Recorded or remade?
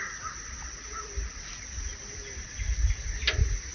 recorded